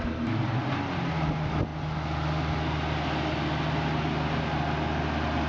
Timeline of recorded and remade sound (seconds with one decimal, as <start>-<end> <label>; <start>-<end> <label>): 0.0-5.5 recorded